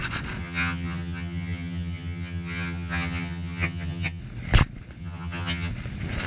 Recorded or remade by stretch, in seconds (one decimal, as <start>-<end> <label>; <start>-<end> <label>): 0.0-0.4 recorded; 0.4-4.2 remade; 4.2-5.0 recorded; 5.0-5.7 remade; 5.7-6.3 recorded